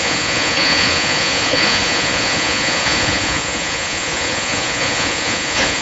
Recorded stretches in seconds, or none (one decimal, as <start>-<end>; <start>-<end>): none